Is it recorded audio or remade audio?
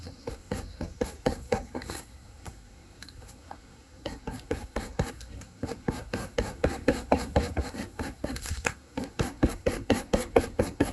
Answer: remade